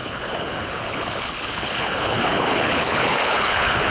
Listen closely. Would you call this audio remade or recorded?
remade